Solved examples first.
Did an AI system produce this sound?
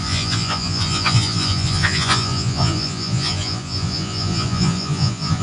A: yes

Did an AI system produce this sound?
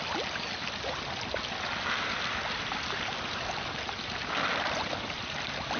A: no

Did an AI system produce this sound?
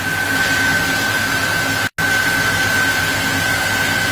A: no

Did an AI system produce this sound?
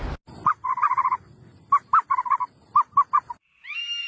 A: no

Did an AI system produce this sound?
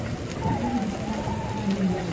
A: no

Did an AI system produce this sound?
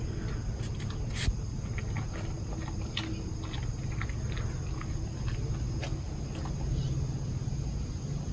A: no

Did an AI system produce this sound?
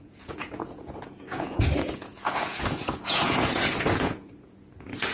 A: yes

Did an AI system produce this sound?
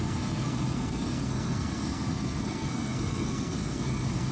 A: yes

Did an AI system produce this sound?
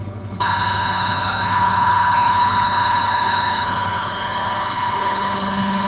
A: yes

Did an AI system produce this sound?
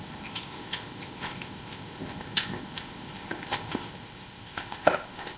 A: yes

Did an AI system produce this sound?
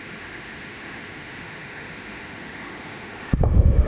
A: yes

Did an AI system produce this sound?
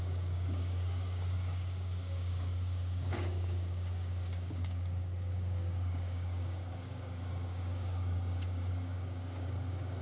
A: yes